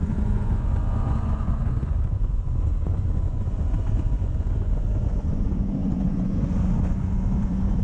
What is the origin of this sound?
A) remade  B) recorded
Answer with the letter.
A